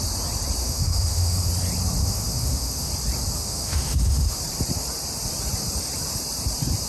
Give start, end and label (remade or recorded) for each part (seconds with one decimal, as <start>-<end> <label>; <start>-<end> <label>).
0.0-0.6 recorded; 0.6-1.5 remade; 1.5-2.0 recorded; 2.0-2.9 remade; 2.9-3.4 recorded; 3.4-4.4 remade; 4.4-6.9 recorded

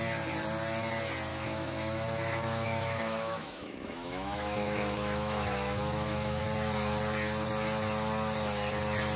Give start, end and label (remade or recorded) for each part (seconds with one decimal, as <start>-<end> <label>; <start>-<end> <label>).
0.0-1.3 recorded; 1.3-6.4 remade; 6.4-9.2 recorded